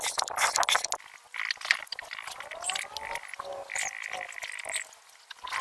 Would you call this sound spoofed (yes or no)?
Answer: no